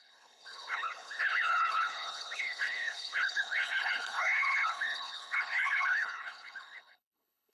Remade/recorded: remade